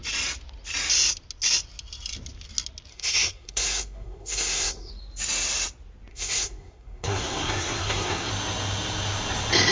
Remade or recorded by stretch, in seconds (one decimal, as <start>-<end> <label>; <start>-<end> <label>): 0.0-2.9 recorded; 2.9-4.9 remade; 4.9-6.1 recorded; 6.1-8.3 remade; 8.3-9.7 recorded